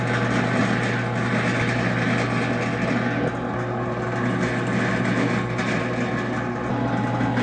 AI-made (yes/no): no